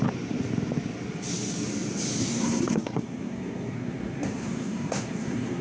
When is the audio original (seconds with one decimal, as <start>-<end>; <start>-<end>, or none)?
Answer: 0.0-2.2